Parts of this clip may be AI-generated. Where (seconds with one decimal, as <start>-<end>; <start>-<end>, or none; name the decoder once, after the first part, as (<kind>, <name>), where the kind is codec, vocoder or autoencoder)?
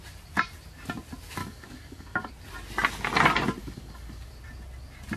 1.4-2.3 (codec, DAC); 3.6-4.3